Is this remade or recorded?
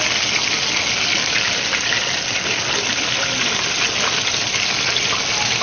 recorded